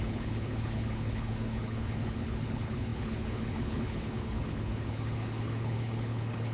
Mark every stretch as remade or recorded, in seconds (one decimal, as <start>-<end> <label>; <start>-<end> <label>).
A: 0.0-6.5 remade